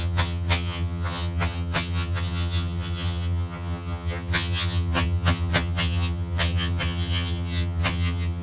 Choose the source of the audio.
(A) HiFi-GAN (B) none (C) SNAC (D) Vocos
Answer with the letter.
A